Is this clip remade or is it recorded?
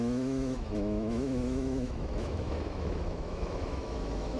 remade